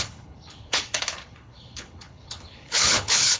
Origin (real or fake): fake